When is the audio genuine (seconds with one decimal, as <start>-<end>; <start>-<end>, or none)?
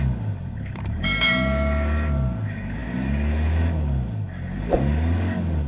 none